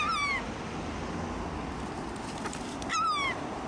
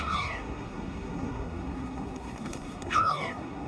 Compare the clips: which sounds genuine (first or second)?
first